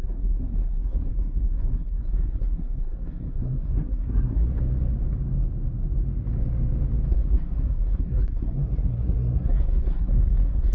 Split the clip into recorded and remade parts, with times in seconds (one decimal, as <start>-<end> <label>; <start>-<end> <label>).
0.0-4.5 remade; 4.5-7.1 recorded; 7.1-10.7 remade

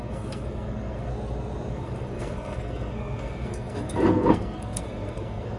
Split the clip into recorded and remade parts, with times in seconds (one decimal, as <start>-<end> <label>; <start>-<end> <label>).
0.0-1.1 remade; 1.1-1.7 recorded; 1.7-5.6 remade

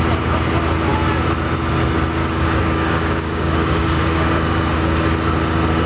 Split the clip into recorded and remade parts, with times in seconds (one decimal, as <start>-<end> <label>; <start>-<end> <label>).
0.0-2.2 recorded; 2.2-4.9 remade; 4.9-5.9 recorded

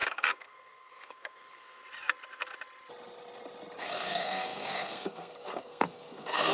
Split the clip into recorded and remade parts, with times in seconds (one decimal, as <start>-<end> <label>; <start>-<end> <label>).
0.0-1.8 remade; 1.8-3.8 recorded; 3.8-6.5 remade

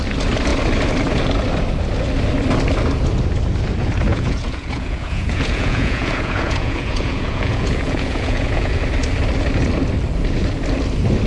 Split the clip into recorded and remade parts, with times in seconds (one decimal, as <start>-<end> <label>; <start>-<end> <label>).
0.0-4.1 recorded; 4.1-8.8 remade; 8.8-11.3 recorded